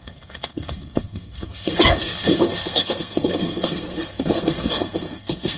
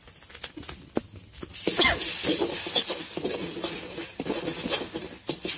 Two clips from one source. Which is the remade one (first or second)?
first